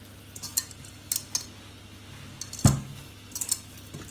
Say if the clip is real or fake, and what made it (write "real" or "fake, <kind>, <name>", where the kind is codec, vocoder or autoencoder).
real